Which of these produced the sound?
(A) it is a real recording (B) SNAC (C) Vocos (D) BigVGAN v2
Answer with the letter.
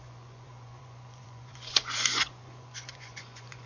C